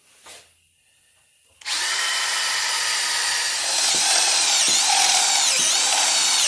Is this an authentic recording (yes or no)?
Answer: yes